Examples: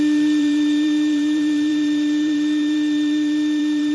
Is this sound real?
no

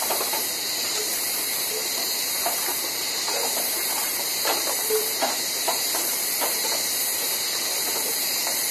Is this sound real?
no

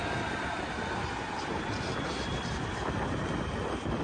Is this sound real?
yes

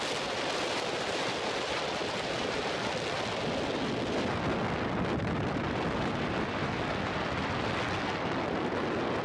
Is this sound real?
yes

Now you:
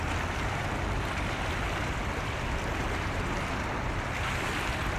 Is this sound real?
yes